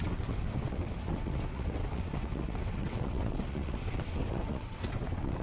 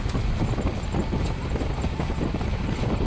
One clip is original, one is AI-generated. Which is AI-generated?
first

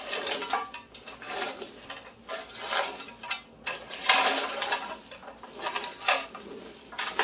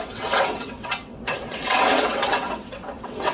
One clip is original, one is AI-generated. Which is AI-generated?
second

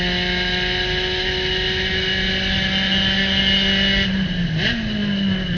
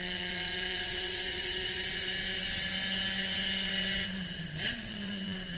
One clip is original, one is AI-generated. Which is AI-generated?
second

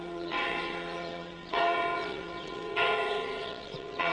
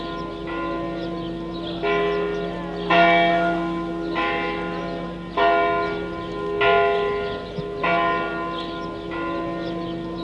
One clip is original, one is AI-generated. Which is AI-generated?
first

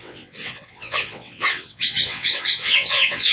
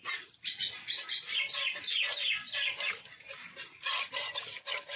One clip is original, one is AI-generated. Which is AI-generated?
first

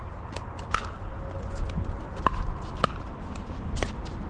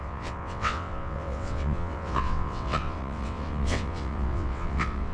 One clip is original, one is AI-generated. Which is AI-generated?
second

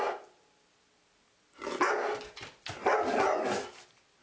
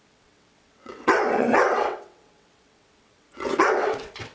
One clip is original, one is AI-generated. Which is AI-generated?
second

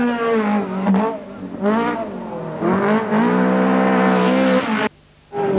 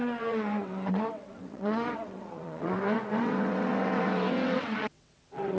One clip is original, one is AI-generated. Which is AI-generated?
second